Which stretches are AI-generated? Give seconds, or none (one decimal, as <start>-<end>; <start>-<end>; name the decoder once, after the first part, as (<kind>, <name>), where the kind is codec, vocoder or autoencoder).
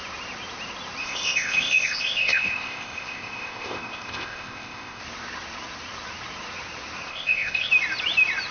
1.0-5.0 (codec, ZipCodec); 7.1-7.7